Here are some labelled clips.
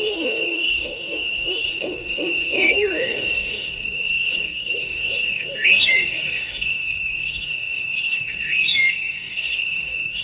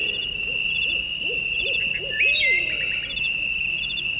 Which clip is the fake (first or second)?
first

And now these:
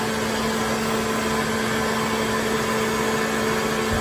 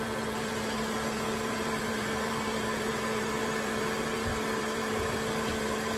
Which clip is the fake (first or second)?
second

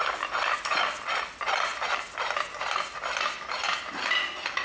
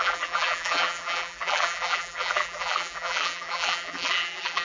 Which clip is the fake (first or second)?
second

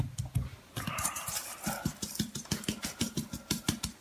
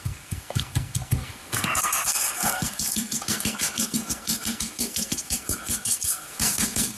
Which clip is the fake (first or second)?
second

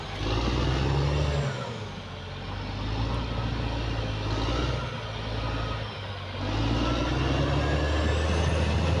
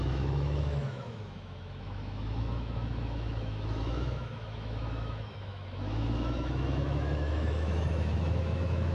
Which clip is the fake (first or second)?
second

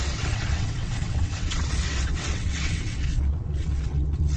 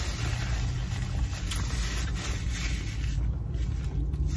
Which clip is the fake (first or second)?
first